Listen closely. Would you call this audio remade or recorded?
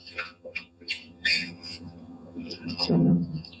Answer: remade